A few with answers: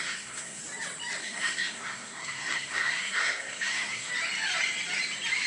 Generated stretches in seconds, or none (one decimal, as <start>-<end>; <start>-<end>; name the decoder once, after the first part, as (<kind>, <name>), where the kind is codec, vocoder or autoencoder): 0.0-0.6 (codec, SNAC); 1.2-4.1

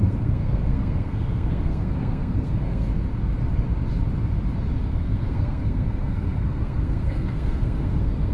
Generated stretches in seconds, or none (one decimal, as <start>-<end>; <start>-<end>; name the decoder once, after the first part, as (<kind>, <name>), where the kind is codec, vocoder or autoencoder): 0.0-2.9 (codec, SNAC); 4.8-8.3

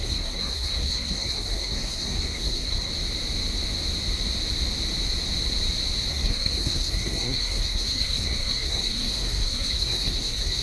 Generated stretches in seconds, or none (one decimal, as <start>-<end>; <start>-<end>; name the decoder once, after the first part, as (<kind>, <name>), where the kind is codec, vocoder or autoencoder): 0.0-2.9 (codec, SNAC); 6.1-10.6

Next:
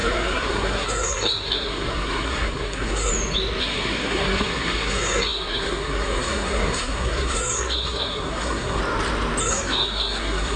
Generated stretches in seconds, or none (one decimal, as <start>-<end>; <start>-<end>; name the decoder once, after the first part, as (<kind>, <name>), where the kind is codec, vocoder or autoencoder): 0.0-3.1 (codec, SNAC); 3.6-8.8; 9.4-10.6